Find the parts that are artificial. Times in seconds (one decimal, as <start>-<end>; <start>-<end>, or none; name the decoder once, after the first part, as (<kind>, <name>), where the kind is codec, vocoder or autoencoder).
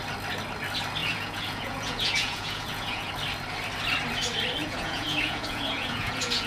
1.0-3.1 (vocoder, Vocos); 4.6-6.5